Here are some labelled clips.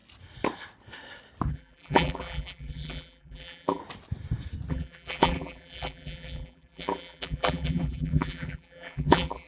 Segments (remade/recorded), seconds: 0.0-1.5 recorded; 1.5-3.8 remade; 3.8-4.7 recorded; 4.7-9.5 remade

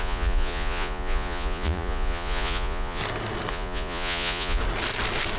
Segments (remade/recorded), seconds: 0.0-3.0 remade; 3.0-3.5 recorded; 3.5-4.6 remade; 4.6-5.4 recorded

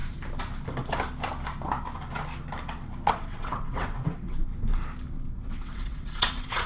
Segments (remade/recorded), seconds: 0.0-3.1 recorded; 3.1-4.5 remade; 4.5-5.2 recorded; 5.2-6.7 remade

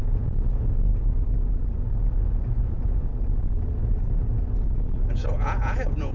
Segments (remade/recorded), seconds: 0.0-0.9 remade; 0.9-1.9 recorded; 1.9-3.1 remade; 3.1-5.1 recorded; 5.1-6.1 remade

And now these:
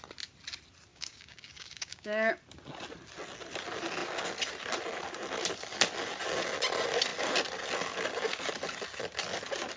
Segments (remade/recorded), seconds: 0.0-0.9 recorded; 0.9-2.3 remade; 2.3-9.8 recorded

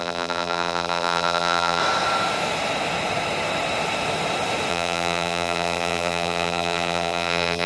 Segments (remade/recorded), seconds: 0.0-1.8 remade; 1.8-4.7 recorded; 4.7-7.7 remade

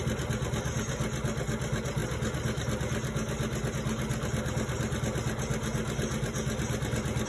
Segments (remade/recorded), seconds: 0.0-7.3 recorded

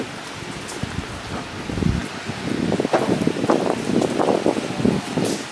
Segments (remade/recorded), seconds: 0.0-2.0 remade; 2.0-5.5 recorded